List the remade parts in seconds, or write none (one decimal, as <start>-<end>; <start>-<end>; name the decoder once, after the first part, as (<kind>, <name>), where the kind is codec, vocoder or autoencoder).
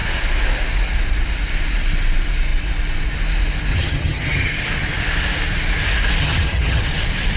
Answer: 3.7-4.5 (vocoder, HiFi-GAN); 6.2-6.8